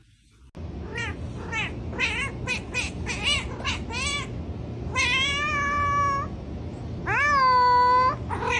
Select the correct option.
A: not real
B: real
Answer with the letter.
B